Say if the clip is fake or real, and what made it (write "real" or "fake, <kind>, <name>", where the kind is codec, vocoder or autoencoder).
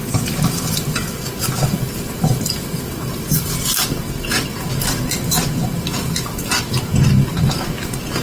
real